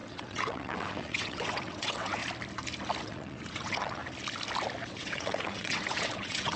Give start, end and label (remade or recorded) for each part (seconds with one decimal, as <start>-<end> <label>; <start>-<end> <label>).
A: 0.0-2.2 remade; 2.2-3.0 recorded; 3.0-4.0 remade; 4.0-4.8 recorded; 4.8-6.6 remade